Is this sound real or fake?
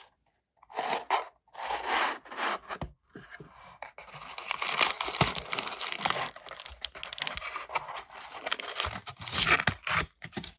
real